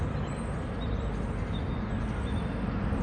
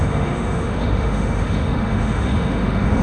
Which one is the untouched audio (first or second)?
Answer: first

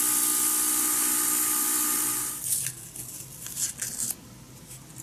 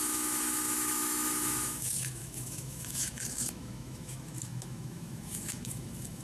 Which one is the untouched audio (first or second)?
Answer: first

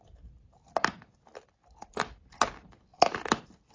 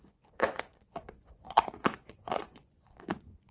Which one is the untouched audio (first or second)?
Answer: first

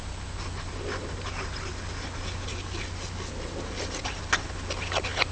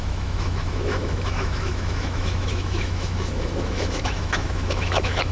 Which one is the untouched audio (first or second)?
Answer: first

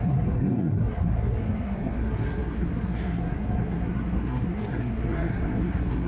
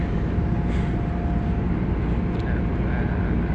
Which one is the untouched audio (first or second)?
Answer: second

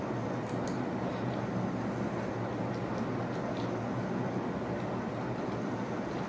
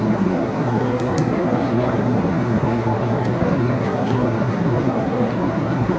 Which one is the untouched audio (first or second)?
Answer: first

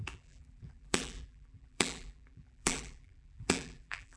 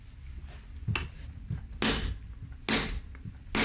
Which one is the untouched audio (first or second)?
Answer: second